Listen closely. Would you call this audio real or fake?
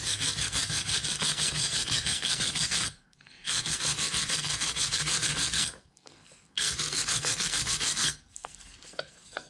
fake